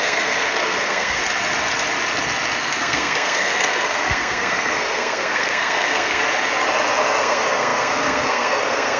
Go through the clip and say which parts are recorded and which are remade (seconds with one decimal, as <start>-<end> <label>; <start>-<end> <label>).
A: 0.0-1.2 remade; 1.2-2.6 recorded; 2.6-6.2 remade; 6.2-7.2 recorded; 7.2-9.0 remade